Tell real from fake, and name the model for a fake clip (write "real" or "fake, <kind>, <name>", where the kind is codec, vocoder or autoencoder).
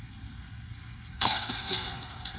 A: fake, codec, SNAC